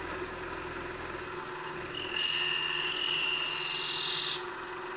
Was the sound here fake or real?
real